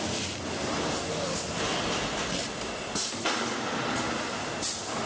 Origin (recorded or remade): recorded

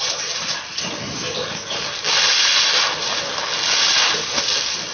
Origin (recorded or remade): recorded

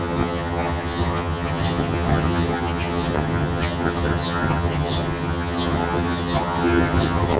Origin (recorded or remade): remade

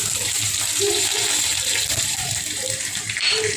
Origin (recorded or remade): remade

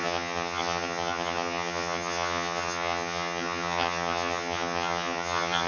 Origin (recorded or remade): remade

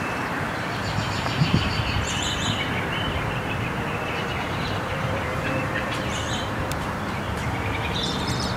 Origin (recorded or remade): remade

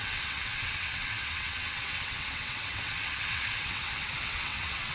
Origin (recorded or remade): remade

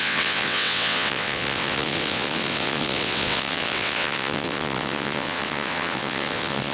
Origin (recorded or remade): remade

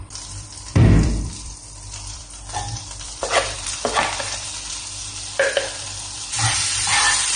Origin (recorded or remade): remade